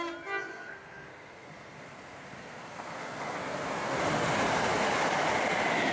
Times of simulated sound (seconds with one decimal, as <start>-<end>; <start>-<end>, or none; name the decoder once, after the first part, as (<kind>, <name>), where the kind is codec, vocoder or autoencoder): 0.5-4.0 (codec, SNAC)